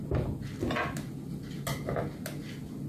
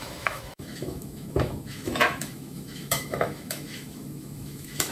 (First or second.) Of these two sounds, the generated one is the second